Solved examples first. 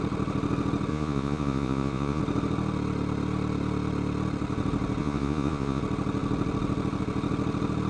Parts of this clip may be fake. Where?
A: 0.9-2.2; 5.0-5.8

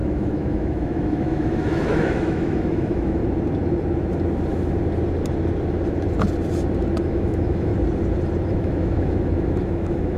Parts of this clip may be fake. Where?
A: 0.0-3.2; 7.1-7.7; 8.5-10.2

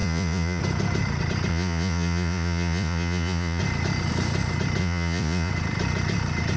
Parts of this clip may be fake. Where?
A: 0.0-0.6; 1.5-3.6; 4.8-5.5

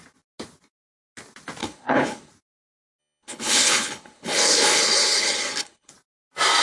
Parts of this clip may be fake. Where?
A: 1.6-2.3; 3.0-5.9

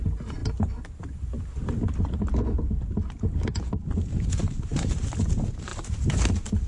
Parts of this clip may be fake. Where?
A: 5.7-6.7